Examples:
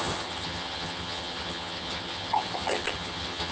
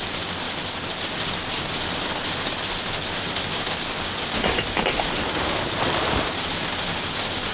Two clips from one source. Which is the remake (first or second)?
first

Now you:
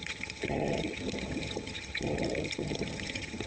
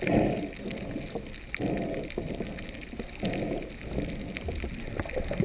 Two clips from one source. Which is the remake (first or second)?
first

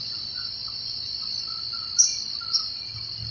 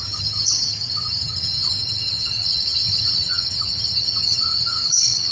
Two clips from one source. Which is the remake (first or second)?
second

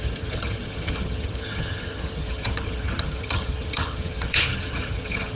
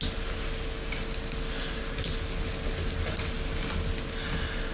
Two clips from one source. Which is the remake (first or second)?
first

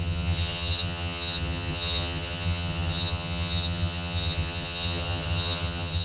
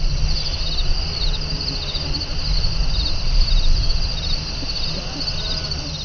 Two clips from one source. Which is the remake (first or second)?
first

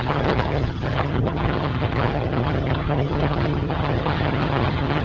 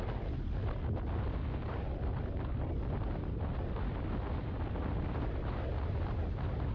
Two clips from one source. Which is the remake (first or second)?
first